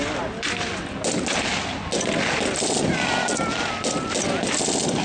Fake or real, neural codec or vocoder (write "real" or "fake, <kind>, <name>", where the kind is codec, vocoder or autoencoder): real